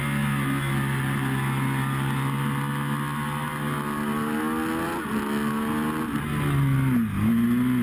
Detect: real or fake real